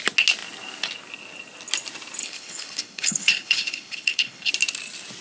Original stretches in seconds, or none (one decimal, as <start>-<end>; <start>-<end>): 0.0-2.2; 4.5-5.2